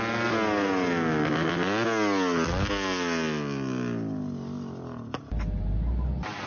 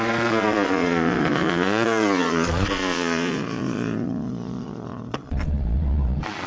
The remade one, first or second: second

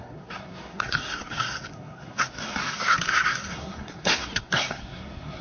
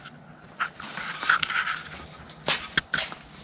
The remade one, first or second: first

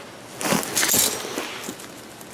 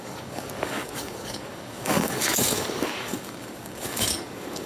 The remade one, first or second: second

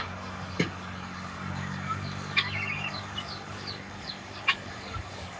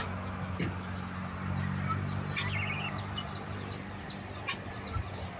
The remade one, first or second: first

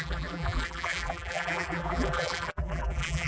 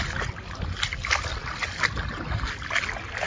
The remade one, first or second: first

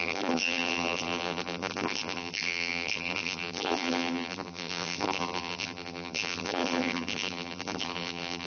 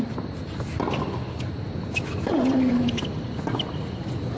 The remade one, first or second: first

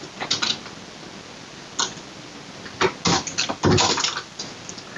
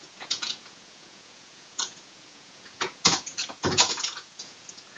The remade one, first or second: second